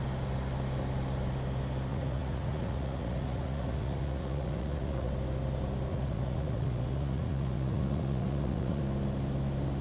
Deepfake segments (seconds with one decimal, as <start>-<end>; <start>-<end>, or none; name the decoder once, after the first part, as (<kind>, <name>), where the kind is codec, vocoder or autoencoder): 1.9-5.1 (vocoder, Vocos); 5.9-8.8